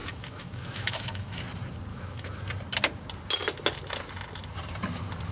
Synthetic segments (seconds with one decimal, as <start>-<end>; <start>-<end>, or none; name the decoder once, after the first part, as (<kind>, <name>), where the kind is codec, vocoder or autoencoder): 0.0-1.4 (autoencoder, DAC-VAE); 1.9-2.4